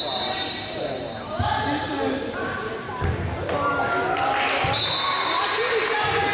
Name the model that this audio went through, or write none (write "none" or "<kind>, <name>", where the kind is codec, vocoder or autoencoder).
none